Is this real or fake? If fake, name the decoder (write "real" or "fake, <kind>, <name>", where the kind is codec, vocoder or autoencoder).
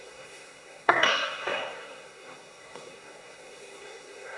fake, codec, SNAC